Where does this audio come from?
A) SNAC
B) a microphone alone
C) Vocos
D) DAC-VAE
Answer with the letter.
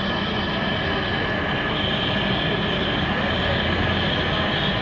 B